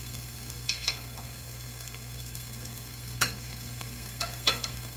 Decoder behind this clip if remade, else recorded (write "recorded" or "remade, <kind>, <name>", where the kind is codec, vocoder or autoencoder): remade, codec, SNAC